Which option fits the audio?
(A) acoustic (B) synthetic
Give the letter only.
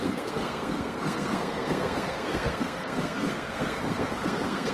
B